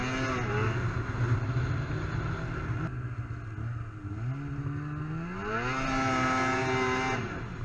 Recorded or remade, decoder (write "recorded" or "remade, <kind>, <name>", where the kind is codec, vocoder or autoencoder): recorded